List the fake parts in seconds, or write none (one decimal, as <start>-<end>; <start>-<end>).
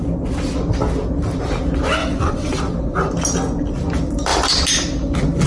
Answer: 2.0-2.6